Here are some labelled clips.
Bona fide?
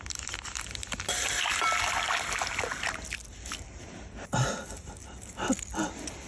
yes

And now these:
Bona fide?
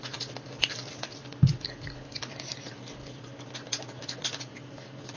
yes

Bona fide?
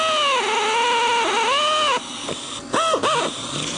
yes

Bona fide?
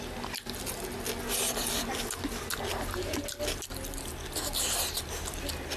yes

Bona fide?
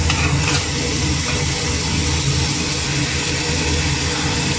yes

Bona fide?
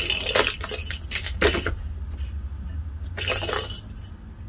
yes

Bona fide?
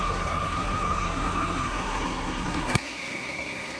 no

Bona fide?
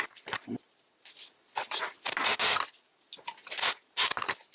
yes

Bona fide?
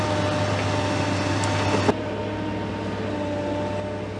yes